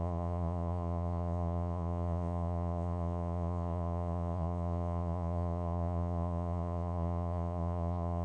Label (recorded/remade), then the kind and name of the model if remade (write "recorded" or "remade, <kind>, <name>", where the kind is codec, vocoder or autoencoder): remade, vocoder, Vocos